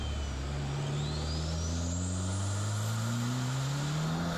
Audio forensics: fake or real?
real